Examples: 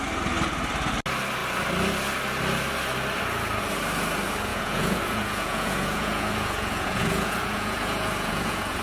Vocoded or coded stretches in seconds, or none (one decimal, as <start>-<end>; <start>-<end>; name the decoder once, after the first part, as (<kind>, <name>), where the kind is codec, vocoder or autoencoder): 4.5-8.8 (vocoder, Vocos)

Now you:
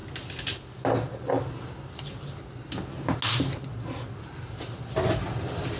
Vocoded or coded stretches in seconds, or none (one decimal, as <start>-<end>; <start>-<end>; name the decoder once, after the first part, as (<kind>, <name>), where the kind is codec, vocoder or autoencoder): none

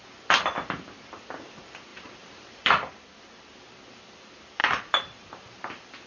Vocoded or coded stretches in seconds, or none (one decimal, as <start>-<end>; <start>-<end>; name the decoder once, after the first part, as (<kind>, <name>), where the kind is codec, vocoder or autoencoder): 1.9-3.0 (vocoder, BigVGAN v2); 4.6-5.5

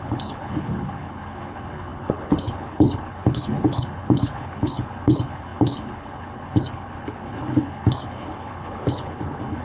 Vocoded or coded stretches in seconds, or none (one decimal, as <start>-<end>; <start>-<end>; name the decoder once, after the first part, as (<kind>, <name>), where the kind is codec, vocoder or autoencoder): 0.0-9.6 (codec, HILCodec)

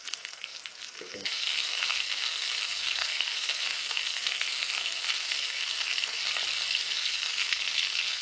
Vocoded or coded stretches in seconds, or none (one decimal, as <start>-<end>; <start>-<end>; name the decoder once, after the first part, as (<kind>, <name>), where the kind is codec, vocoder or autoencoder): 0.0-6.2 (codec, SNAC); 6.8-8.2

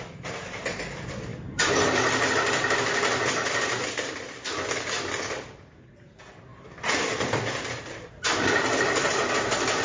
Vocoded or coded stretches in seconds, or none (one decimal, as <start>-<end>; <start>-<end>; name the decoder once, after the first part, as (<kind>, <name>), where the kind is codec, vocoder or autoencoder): none

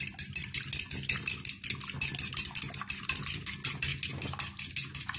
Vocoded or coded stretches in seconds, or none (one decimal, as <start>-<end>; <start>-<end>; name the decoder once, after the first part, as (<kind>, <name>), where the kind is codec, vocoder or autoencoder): none